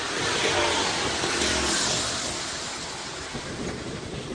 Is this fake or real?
real